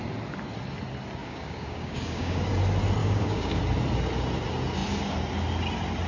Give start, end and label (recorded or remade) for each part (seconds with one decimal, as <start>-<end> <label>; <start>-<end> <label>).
0.0-1.2 recorded; 1.2-2.5 remade; 2.5-3.0 recorded; 3.0-3.6 remade; 3.6-6.1 recorded